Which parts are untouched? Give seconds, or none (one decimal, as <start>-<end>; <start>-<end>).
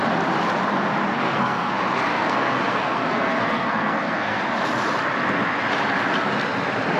0.0-1.1; 1.7-2.1; 4.4-7.0